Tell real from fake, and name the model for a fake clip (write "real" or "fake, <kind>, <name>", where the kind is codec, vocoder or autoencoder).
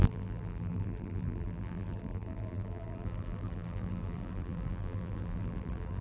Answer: fake, vocoder, BigVGAN v2